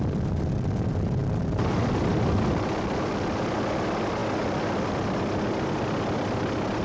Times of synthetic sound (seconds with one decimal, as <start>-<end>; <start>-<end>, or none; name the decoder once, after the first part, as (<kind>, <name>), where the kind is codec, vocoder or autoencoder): 0.0-1.2 (vocoder, BigVGAN v2); 1.7-6.8